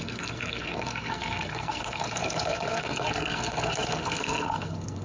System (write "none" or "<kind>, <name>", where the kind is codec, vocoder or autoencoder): codec, SNAC